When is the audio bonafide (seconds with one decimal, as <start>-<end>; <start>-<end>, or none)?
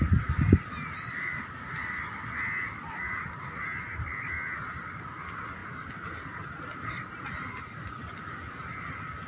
0.0-9.3